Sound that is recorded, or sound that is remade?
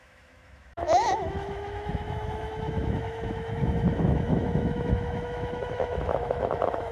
remade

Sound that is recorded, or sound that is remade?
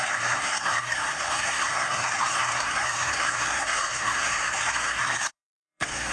remade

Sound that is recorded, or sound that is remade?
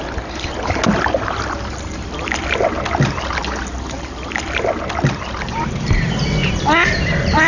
recorded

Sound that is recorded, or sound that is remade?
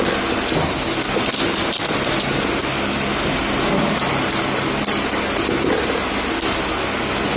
recorded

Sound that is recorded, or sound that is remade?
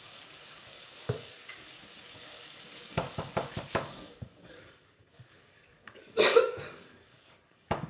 remade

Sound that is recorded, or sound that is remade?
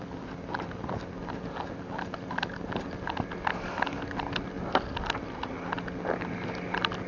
recorded